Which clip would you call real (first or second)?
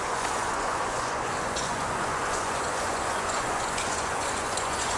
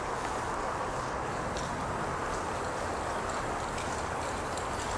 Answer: second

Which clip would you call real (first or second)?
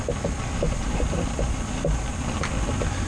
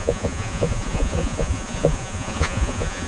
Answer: first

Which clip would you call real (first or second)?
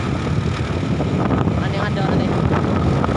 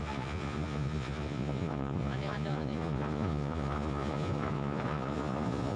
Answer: first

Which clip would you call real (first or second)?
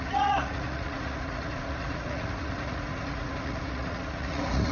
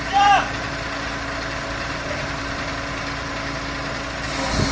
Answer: second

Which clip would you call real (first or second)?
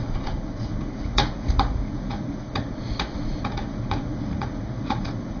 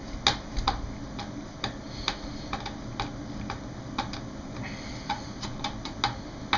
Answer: second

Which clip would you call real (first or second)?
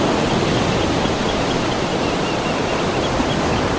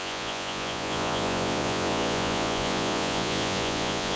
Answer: first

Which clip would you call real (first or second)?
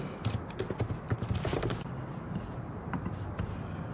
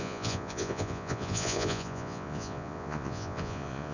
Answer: first